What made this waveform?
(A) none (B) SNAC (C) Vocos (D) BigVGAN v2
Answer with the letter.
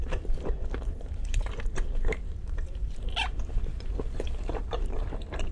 D